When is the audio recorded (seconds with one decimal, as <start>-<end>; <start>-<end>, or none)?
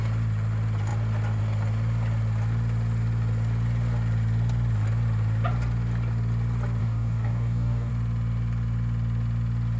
0.0-6.8; 7.9-9.8